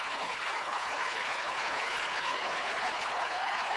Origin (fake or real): fake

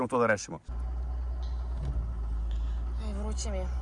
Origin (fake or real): real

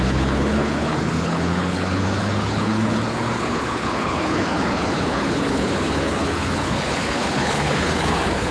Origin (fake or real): fake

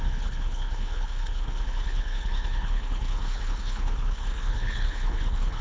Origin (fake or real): fake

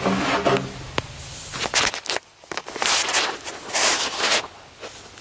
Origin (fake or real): real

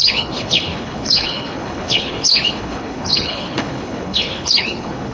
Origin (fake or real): fake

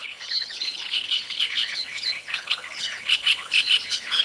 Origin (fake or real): fake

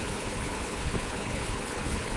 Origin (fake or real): fake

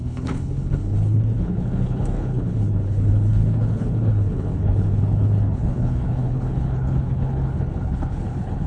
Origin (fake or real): fake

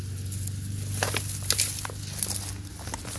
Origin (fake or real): real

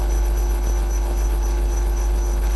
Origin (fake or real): fake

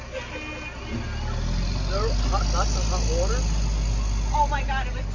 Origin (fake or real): real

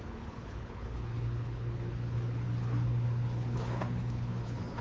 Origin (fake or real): fake